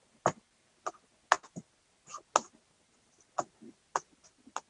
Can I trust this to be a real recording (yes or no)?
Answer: yes